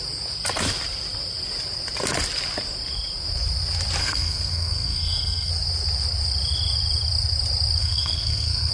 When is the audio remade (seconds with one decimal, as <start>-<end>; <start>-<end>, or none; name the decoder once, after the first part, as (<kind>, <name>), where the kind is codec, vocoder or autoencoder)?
4.0-5.5 (codec, SNAC); 7.8-8.7